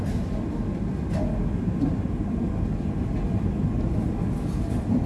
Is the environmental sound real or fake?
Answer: real